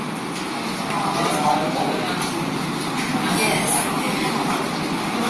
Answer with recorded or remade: recorded